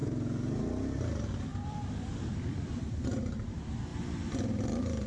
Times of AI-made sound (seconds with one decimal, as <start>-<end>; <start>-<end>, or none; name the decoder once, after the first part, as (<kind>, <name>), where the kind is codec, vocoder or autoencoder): 1.5-3.2 (vocoder, BigVGAN v2); 3.9-5.1